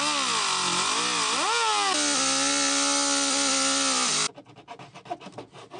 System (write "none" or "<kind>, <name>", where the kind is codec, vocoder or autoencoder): none